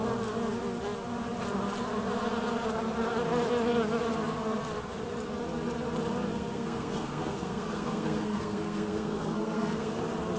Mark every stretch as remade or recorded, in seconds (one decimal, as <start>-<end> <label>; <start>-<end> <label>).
0.0-6.3 recorded; 6.3-10.0 remade; 10.0-10.4 recorded